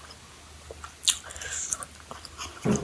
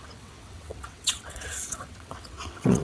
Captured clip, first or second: first